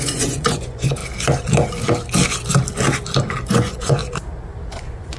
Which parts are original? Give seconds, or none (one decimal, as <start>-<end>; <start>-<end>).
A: 1.0-3.5; 4.0-4.7